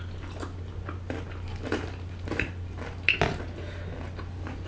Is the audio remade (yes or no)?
no